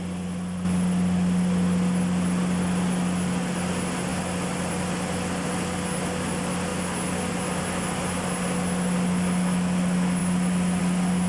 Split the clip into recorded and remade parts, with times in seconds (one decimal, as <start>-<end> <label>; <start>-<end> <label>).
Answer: 0.0-11.3 recorded